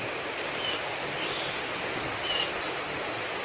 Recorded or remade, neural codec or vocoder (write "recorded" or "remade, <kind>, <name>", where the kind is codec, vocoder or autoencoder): recorded